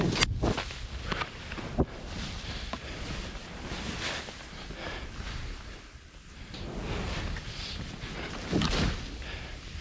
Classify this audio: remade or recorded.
recorded